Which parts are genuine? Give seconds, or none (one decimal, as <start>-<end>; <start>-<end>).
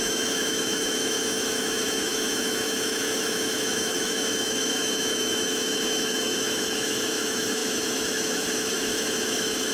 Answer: none